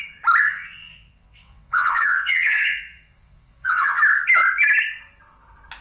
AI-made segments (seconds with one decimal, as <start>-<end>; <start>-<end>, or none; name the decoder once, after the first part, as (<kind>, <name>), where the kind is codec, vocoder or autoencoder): 0.5-4.0 (vocoder, WaveNeXt)